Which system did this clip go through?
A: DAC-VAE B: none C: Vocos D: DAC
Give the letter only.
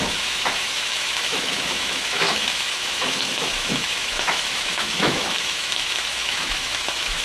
A